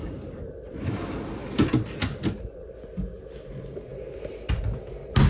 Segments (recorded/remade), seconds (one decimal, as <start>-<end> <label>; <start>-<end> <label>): 0.0-5.3 recorded